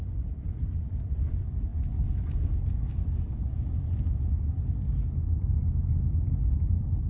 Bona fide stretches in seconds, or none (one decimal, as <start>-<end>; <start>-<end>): 0.0-7.1